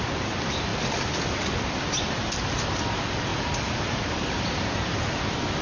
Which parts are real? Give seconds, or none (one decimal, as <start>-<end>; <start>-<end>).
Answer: 0.0-3.3; 5.0-5.6